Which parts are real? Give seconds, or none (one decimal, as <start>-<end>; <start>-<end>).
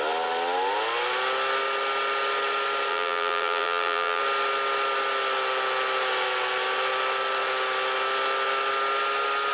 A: 0.0-2.9; 4.2-9.5